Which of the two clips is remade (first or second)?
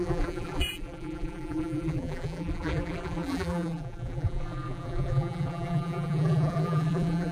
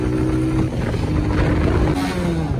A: first